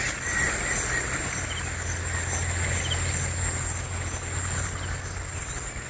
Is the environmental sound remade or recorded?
recorded